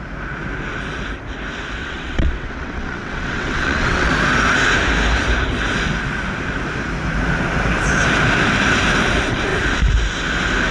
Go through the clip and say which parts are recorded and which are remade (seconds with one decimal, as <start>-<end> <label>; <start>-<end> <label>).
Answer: 0.0-1.8 recorded; 1.8-4.1 remade; 4.1-10.7 recorded

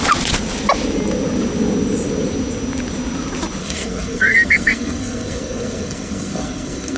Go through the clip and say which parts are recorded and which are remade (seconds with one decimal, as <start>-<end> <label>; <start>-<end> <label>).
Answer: 0.0-3.6 recorded; 3.6-7.0 remade

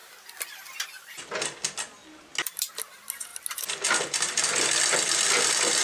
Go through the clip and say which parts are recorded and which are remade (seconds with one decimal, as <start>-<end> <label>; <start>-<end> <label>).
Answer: 0.0-5.8 recorded

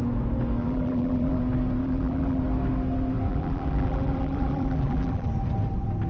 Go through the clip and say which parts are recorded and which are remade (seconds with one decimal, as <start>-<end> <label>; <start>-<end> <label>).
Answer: 0.0-0.6 recorded; 0.6-1.4 remade; 1.4-1.8 recorded; 1.8-2.4 remade; 2.4-3.3 recorded; 3.3-5.3 remade; 5.3-6.1 recorded

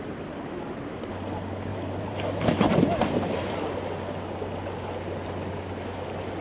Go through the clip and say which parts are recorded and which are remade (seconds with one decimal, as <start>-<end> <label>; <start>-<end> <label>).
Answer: 0.0-1.7 recorded; 1.7-3.5 remade; 3.5-6.4 recorded

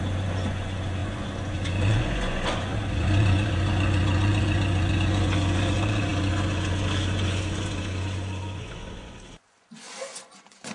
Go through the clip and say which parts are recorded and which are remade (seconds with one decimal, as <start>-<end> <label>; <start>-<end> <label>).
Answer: 0.0-10.7 remade

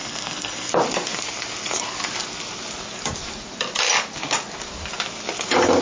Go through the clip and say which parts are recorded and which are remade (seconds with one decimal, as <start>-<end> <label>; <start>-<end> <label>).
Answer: 0.0-0.7 remade; 0.7-5.8 recorded